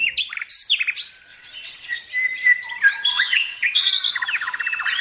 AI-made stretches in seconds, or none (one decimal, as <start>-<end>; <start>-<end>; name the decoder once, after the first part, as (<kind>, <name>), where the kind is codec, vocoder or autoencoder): 1.3-2.0 (vocoder, WaveNeXt); 3.1-3.9